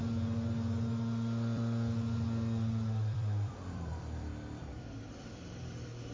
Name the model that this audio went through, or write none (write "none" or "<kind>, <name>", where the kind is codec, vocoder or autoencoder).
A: vocoder, BigVGAN v2